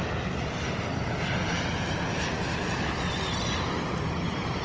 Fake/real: real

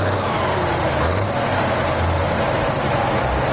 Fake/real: real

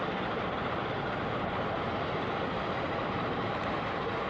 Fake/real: real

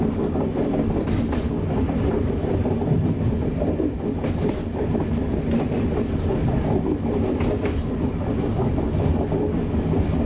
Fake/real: real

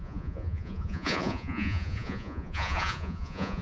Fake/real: fake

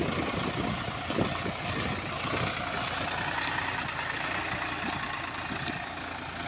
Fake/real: real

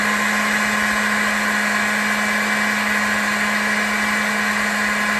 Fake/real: real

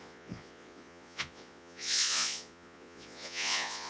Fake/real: fake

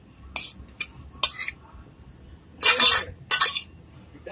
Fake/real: real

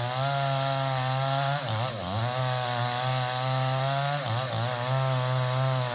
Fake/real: real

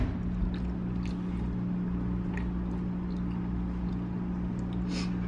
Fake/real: real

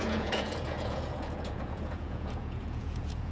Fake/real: fake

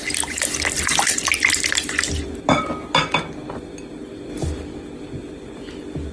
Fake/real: real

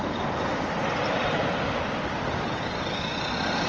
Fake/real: real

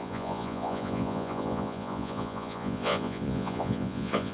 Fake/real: fake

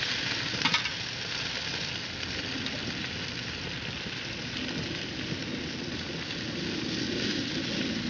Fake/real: real